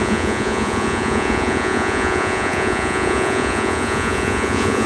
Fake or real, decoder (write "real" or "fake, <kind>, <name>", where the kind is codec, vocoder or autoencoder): fake, vocoder, Vocos